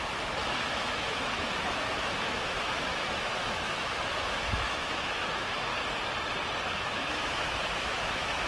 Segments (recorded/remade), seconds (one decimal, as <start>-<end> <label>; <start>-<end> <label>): 0.0-5.7 remade; 5.7-6.7 recorded; 6.7-8.5 remade